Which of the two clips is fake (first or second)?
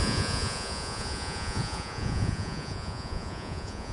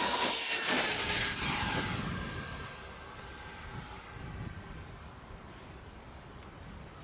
first